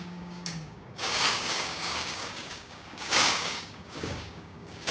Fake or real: fake